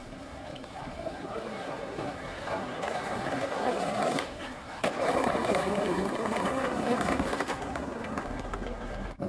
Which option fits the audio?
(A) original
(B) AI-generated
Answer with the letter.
B